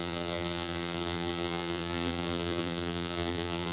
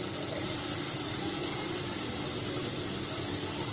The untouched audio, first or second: second